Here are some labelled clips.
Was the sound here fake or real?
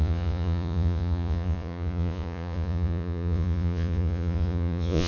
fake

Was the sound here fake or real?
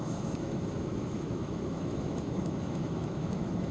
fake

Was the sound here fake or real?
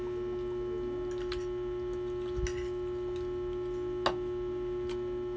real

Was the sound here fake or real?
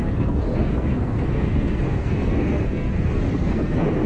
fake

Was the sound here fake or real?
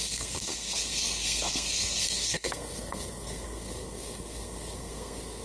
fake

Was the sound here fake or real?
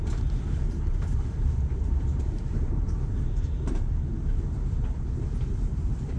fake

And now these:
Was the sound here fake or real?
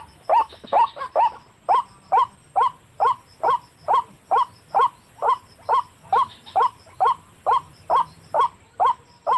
real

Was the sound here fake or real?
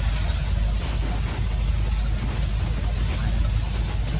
real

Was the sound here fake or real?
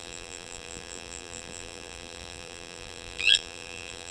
fake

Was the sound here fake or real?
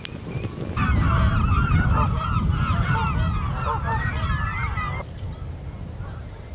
fake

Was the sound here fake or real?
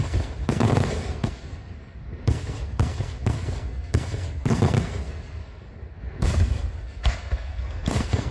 fake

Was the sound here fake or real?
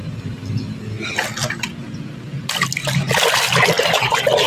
real